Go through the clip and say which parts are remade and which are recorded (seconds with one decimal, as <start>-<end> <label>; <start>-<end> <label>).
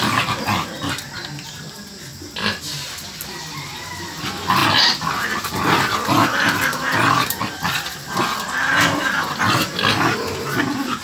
0.0-11.0 recorded